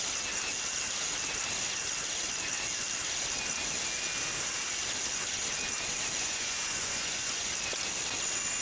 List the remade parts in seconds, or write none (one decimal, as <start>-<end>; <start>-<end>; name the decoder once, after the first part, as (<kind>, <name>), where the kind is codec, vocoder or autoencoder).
6.2-7.5 (vocoder, Vocos)